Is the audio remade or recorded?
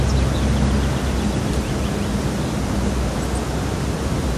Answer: recorded